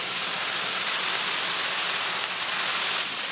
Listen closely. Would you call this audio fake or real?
real